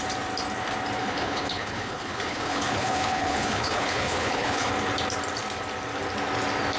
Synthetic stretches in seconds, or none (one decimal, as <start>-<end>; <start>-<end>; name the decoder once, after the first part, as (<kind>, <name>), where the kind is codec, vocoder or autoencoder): 1.0-4.7 (codec, HILCodec)